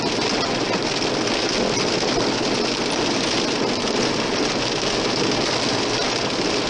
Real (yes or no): yes